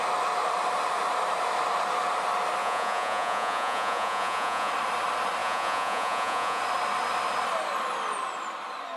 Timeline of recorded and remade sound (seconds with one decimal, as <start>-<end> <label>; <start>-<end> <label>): 0.0-2.6 recorded; 2.6-4.7 remade; 4.7-5.4 recorded; 5.4-6.6 remade; 6.6-9.0 recorded